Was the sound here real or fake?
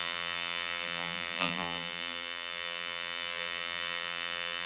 fake